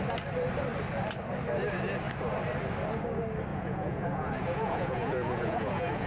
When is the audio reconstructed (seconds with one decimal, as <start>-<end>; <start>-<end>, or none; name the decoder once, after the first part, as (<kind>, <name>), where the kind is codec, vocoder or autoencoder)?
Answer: 3.5-6.1 (vocoder, Vocos)